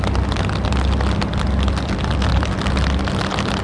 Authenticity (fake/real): real